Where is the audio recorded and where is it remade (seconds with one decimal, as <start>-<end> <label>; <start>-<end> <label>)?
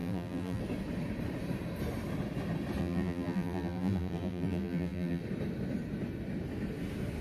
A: 0.0-0.6 remade; 0.6-2.8 recorded; 2.8-5.2 remade; 5.2-7.2 recorded